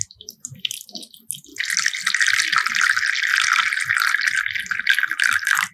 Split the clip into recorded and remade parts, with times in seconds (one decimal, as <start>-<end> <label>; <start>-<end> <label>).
0.0-5.7 recorded